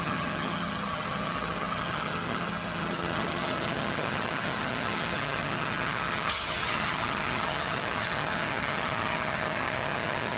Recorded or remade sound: remade